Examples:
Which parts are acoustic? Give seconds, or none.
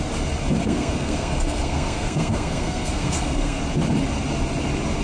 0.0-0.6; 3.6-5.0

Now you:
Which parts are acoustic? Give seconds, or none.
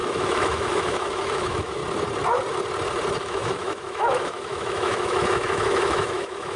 1.8-3.2